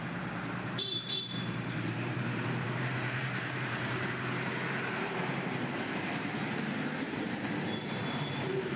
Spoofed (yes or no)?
yes